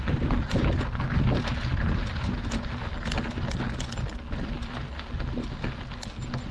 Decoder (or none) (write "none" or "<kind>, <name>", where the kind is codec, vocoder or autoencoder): none